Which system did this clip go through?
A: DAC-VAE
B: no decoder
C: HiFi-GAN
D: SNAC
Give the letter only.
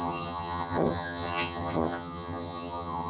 C